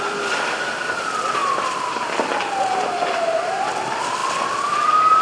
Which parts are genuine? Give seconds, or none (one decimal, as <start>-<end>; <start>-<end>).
0.0-5.2